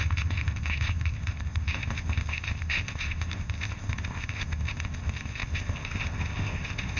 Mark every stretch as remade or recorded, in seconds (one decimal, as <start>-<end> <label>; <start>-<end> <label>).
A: 0.0-7.0 remade